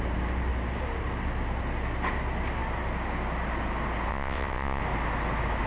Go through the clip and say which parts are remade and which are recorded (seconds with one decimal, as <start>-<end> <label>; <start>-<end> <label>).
0.0-4.1 recorded; 4.1-4.8 remade; 4.8-5.7 recorded